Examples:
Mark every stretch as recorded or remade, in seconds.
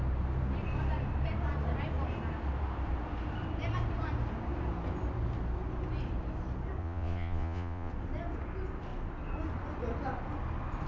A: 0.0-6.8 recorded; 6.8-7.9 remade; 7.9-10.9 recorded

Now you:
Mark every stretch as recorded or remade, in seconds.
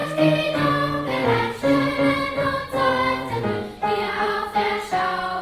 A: 0.0-0.7 remade; 0.7-1.2 recorded; 1.2-3.4 remade; 3.4-3.8 recorded; 3.8-4.7 remade; 4.7-5.4 recorded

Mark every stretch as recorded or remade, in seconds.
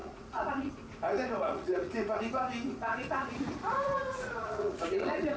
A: 0.0-0.7 remade; 0.7-1.1 recorded; 1.1-2.3 remade; 2.3-2.9 recorded; 2.9-5.4 remade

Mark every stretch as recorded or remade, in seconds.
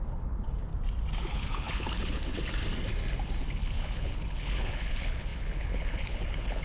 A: 0.0-0.7 remade; 0.7-1.3 recorded; 1.3-2.3 remade; 2.3-3.6 recorded; 3.6-6.6 remade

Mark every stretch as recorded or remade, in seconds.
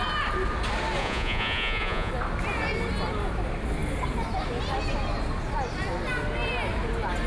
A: 0.0-1.0 recorded; 1.0-2.1 remade; 2.1-7.3 recorded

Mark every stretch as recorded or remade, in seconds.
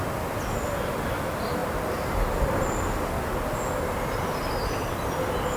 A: 0.0-5.6 recorded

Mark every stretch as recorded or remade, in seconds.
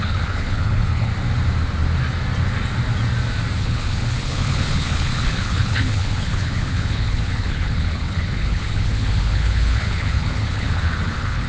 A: 0.0-1.1 remade; 1.1-3.6 recorded; 3.6-11.5 remade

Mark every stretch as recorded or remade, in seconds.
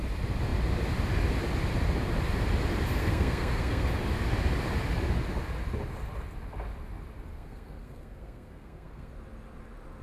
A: 0.0-3.0 recorded; 3.0-3.9 remade; 3.9-7.3 recorded; 7.3-9.1 remade; 9.1-10.0 recorded